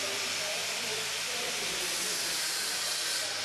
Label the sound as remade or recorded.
remade